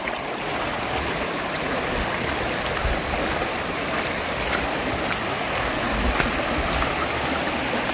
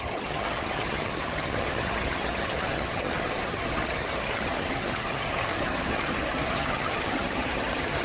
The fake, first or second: second